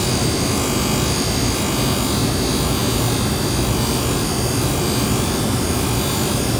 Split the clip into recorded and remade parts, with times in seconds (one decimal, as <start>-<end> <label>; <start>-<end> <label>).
0.0-6.6 recorded

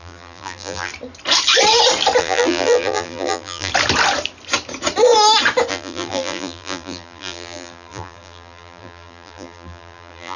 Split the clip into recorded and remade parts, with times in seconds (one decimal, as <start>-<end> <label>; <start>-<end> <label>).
0.0-0.9 remade; 0.9-2.2 recorded; 2.2-3.7 remade; 3.7-5.7 recorded; 5.7-10.4 remade

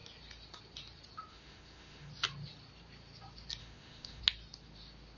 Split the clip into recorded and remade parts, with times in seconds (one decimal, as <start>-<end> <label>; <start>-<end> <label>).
0.0-1.3 recorded; 1.3-2.1 remade; 2.1-3.6 recorded; 3.6-4.2 remade; 4.2-5.2 recorded

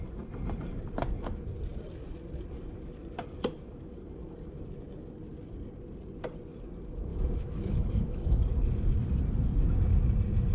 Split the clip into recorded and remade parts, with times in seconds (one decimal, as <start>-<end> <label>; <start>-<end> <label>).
0.0-7.1 recorded; 7.1-8.4 remade; 8.4-10.5 recorded